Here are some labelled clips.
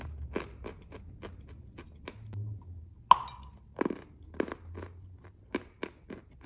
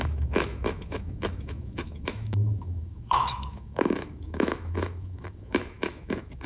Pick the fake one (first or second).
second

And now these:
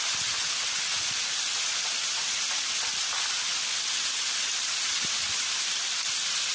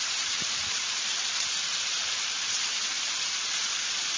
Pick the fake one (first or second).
second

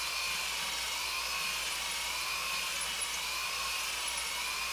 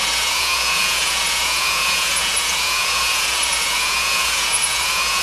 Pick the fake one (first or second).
second